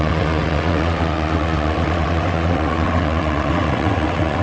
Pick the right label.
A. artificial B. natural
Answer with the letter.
A